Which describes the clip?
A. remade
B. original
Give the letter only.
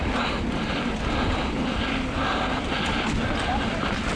B